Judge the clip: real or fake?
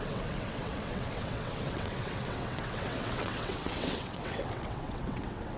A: fake